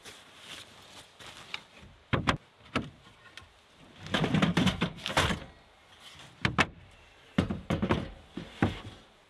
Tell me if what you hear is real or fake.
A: real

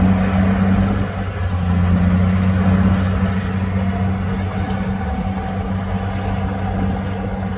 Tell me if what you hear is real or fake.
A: real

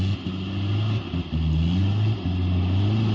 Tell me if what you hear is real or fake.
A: real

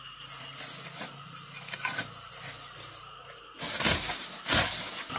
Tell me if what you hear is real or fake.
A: real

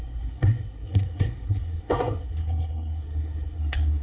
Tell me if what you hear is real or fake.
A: fake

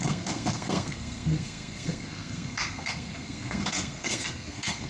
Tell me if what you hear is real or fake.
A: fake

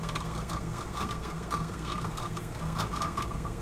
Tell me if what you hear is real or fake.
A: fake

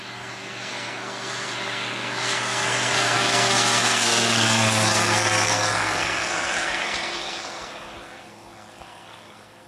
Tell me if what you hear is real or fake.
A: fake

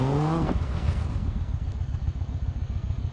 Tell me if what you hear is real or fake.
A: fake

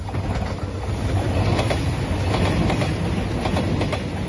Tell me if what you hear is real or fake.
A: real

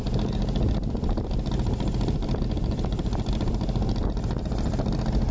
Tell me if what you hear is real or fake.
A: real